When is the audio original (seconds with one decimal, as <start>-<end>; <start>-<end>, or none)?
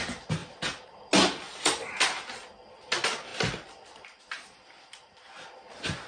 0.0-6.1